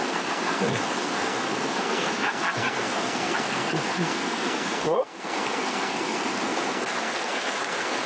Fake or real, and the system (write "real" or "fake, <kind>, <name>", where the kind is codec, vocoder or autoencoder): fake, codec, SNAC